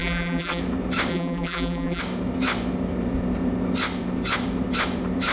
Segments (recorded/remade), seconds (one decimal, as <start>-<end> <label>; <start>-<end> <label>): 0.0-0.6 remade; 0.6-1.1 recorded; 1.1-2.0 remade; 2.0-5.3 recorded